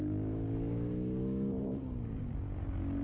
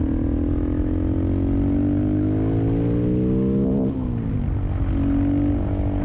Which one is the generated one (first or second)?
first